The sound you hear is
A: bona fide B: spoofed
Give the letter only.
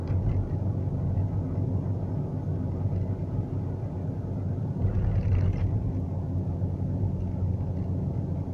A